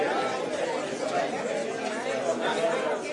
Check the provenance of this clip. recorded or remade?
recorded